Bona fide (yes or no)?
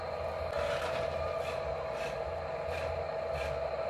yes